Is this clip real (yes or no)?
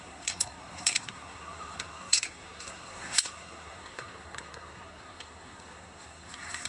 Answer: no